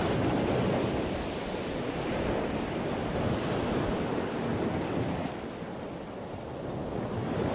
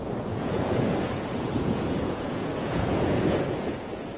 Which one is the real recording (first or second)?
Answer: first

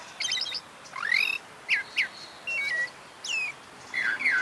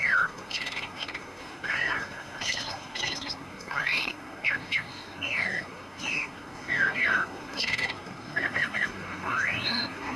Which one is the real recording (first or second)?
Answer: first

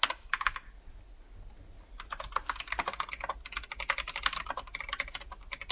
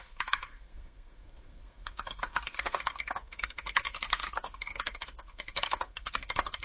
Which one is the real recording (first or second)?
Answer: first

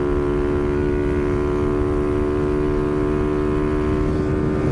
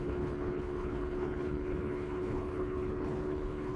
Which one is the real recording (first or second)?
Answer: first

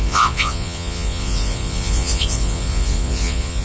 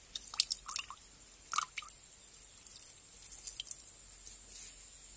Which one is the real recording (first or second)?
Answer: second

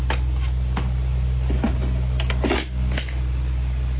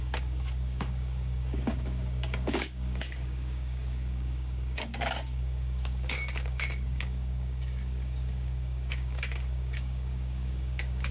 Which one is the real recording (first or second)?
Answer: first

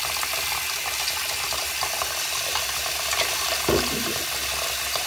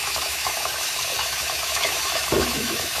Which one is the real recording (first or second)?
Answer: first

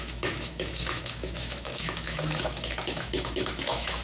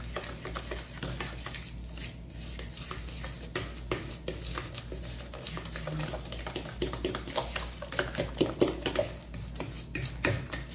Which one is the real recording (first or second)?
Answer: second